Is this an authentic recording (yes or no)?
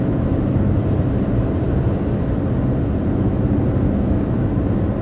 yes